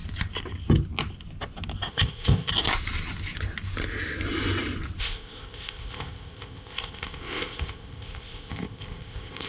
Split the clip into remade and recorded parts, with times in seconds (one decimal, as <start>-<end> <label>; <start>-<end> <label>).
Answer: 0.0-1.9 recorded; 1.9-2.5 remade; 2.5-5.0 recorded; 5.0-9.5 remade